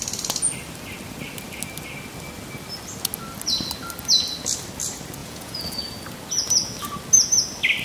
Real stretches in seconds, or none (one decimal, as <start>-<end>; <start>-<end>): 0.0-5.2; 5.8-7.8